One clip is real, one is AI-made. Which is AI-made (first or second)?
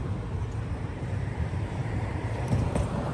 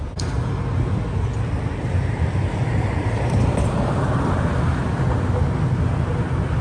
first